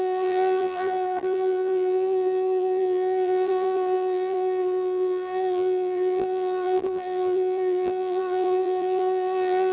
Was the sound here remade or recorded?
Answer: remade